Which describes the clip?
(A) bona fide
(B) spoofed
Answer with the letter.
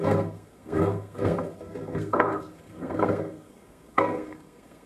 B